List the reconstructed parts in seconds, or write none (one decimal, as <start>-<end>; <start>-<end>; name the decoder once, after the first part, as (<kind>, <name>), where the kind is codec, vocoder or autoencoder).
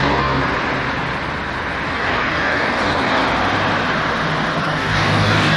0.0-0.4 (codec, DAC); 1.9-3.2; 4.6-5.6